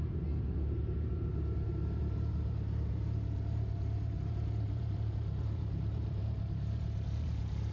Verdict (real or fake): fake